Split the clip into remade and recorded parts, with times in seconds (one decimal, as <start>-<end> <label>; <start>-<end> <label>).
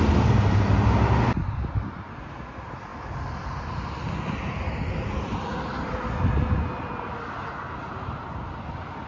0.0-9.1 recorded